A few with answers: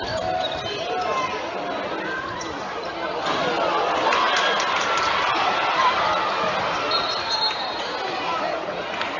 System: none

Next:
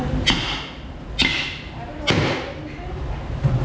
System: none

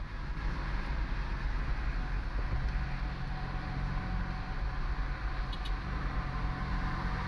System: none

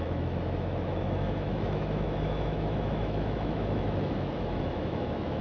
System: autoencoder, DAC-VAE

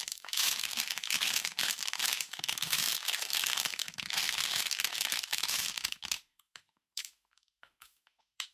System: autoencoder, DAC-VAE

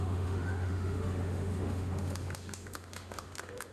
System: autoencoder, DAC-VAE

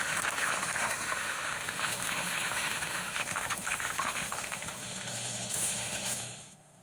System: autoencoder, DAC-VAE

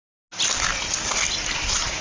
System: none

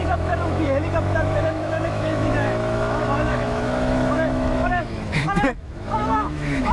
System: autoencoder, DAC-VAE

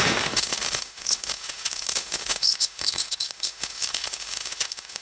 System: autoencoder, DAC-VAE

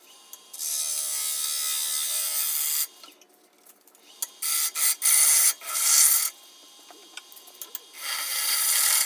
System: none